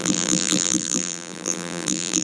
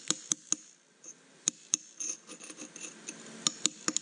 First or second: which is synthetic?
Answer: first